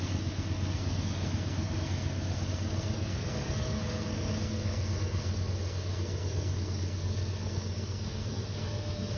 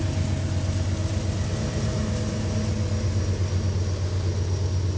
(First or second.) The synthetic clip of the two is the first